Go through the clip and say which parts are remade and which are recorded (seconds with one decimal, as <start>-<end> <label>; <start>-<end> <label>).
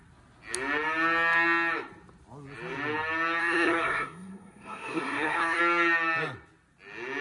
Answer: 0.0-3.4 recorded; 3.4-5.6 remade; 5.6-7.2 recorded